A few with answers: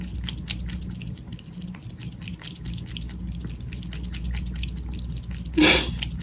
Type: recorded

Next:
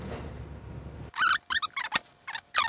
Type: recorded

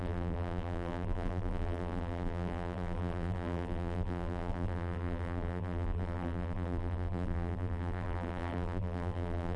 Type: remade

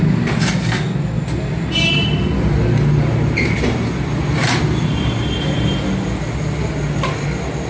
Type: recorded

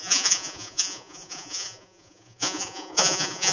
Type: remade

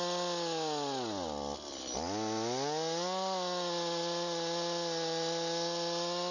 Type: recorded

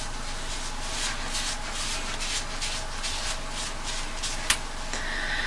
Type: recorded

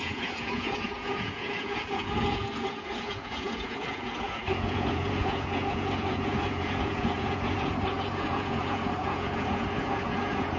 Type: remade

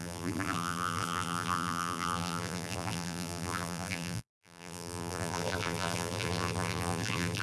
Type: remade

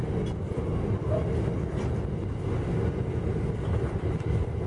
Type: recorded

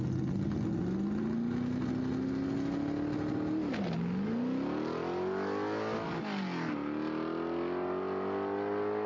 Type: recorded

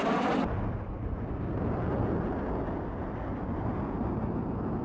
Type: recorded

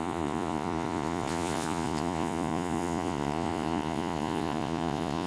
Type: remade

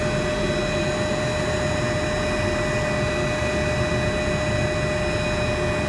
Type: recorded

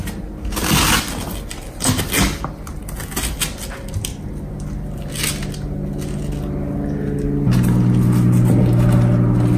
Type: recorded